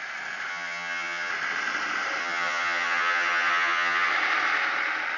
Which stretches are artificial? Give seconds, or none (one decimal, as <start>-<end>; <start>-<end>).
0.5-1.3; 2.2-4.1